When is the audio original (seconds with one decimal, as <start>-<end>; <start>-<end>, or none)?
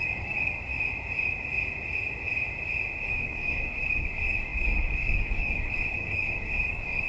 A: 0.7-3.1